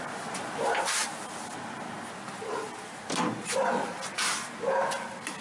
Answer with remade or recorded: recorded